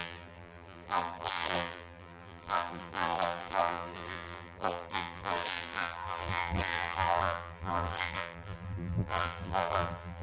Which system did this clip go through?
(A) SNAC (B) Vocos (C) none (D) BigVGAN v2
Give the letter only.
D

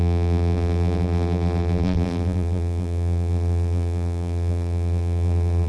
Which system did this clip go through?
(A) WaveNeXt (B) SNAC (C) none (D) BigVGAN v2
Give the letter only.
D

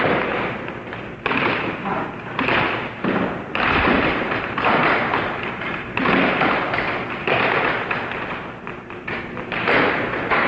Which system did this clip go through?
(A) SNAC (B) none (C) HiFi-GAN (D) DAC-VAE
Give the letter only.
B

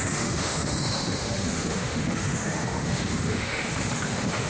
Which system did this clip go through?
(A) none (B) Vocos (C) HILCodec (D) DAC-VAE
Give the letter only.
D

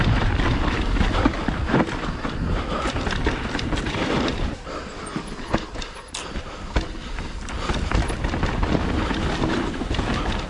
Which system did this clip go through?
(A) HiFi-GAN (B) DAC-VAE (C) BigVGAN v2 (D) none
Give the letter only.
C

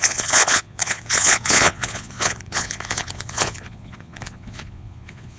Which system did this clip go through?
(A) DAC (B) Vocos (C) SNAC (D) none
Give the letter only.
B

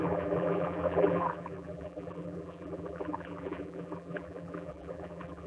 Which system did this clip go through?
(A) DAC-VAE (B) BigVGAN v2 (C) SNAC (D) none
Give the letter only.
B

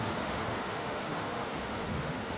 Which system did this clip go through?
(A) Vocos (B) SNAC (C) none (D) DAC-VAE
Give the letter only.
D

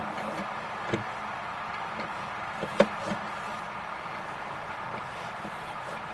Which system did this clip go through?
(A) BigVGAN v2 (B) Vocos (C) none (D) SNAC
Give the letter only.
C